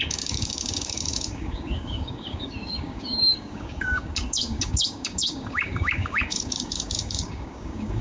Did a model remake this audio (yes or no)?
yes